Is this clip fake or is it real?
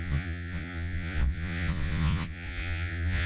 fake